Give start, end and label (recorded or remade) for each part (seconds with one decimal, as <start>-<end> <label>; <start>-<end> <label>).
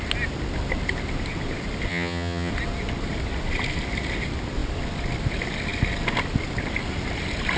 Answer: 0.0-1.9 recorded; 1.9-2.5 remade; 2.5-7.6 recorded